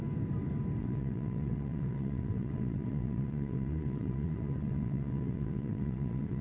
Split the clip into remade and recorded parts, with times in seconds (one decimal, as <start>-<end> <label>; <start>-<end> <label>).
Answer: 0.0-0.8 recorded; 0.8-6.4 remade